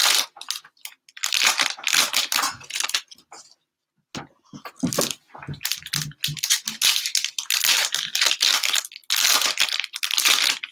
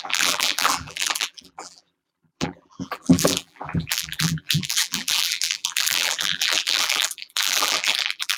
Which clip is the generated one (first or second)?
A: second